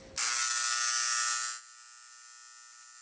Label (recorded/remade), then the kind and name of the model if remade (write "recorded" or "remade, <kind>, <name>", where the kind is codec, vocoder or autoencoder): recorded